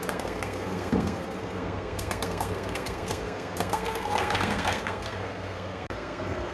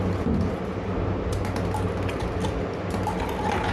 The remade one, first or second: first